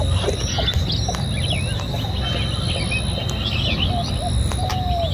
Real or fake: real